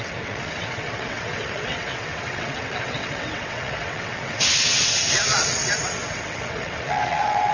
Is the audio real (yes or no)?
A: no